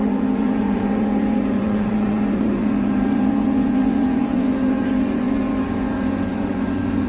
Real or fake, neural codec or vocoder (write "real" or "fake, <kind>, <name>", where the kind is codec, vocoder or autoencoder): fake, vocoder, Vocos